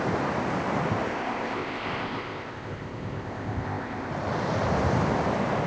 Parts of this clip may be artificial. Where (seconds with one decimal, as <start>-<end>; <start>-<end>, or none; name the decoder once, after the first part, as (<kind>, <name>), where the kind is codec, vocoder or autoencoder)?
1.1-4.1 (codec, ZipCodec)